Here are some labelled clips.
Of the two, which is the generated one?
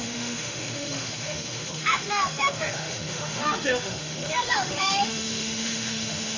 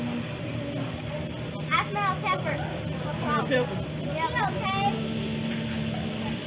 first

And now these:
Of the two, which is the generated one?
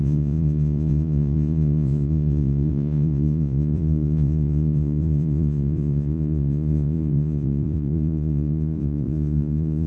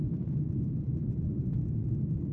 first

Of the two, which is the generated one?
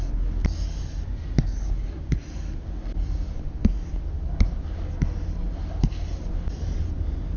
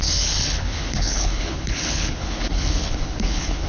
second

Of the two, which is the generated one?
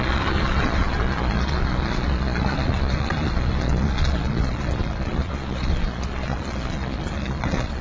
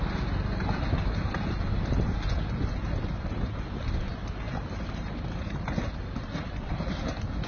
first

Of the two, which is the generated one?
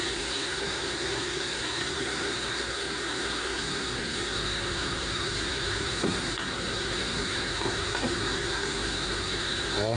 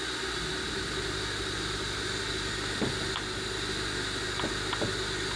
first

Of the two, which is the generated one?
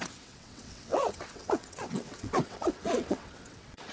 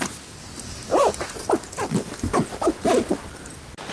first